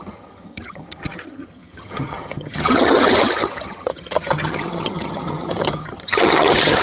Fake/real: fake